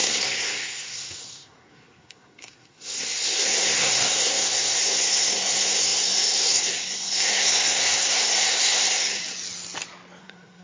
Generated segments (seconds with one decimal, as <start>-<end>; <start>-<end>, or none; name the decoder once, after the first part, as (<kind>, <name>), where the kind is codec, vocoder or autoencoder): 0.0-9.2 (codec, SNAC); 10.2-10.6